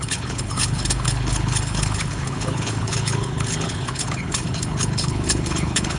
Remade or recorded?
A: remade